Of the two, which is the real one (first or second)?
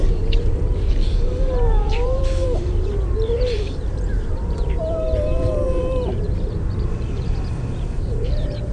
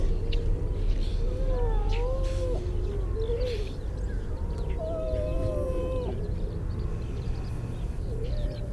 second